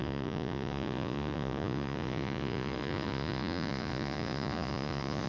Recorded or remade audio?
remade